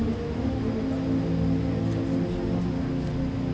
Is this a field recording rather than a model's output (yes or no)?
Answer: yes